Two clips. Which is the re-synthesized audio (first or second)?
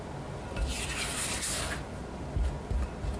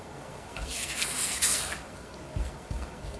second